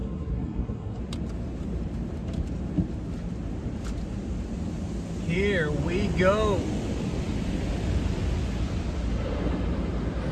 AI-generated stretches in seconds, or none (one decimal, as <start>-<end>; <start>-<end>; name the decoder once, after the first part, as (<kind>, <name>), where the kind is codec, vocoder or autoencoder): 0.0-1.0 (codec, SNAC)